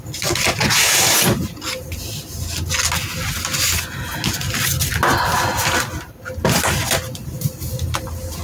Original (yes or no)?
yes